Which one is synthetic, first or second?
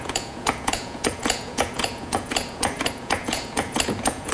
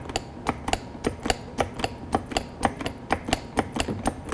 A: first